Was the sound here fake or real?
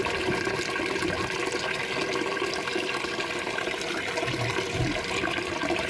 real